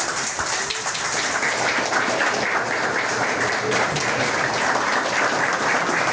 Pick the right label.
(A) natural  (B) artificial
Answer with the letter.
B